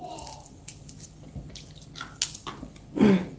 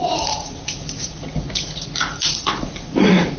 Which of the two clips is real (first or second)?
first